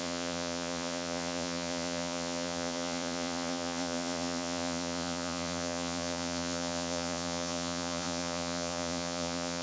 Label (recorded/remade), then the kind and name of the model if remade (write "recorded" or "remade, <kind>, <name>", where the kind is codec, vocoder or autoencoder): remade, vocoder, Vocos